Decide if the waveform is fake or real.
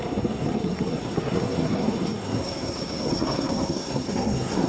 fake